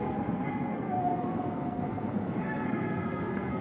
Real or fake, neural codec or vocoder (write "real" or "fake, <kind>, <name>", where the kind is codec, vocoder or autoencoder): fake, codec, SNAC